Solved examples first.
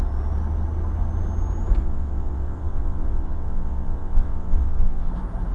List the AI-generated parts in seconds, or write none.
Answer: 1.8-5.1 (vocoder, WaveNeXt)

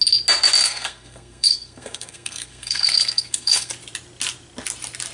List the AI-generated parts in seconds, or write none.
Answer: 0.6-3.7 (codec, SNAC)

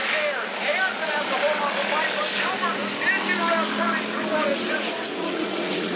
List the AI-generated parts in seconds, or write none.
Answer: 4.5-6.0 (vocoder, Vocos)

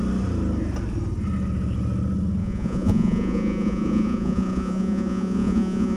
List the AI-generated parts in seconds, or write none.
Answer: 2.4-6.0 (vocoder, Vocos)

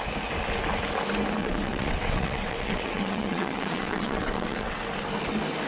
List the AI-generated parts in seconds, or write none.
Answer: 1.4-4.8 (vocoder, WaveNeXt)